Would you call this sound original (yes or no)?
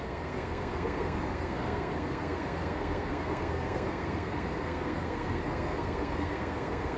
no